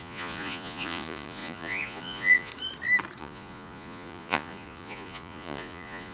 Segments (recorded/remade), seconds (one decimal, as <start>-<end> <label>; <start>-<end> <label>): 0.0-2.5 remade; 2.5-3.2 recorded; 3.2-6.1 remade